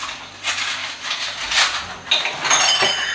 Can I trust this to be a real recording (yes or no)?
yes